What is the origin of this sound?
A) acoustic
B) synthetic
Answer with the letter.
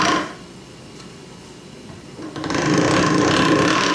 A